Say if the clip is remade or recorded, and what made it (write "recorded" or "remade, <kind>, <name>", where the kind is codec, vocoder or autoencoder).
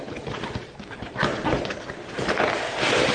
recorded